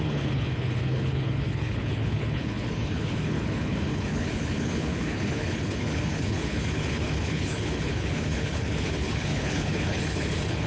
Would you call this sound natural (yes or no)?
no